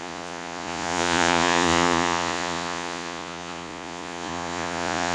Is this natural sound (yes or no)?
no